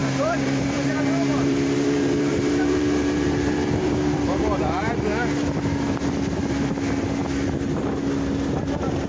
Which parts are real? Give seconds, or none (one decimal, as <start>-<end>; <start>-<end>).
4.9-9.1